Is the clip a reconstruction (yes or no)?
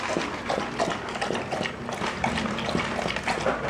no